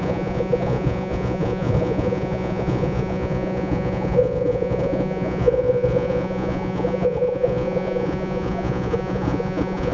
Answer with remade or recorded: remade